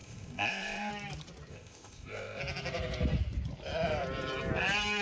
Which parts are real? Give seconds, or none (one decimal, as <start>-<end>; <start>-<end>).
0.9-1.5; 2.4-5.0